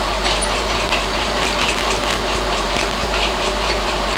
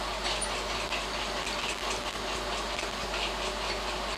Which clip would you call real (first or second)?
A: second